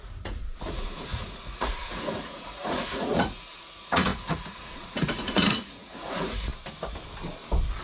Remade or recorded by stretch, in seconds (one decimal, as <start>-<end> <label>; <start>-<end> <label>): 0.0-6.5 remade; 6.5-7.8 recorded